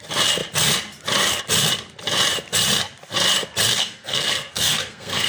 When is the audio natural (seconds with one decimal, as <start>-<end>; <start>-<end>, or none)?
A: 0.0-3.8